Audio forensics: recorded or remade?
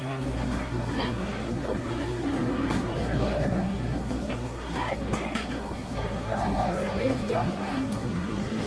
remade